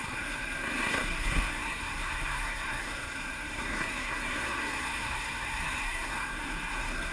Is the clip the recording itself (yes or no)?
no